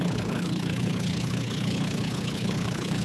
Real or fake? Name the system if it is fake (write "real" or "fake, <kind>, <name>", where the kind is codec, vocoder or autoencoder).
fake, codec, HILCodec